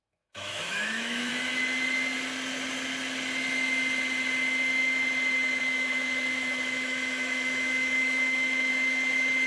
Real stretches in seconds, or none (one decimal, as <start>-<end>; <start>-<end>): 1.3-5.6; 8.7-9.5